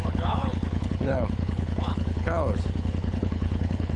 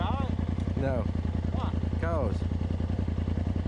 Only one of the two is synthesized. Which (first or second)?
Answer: first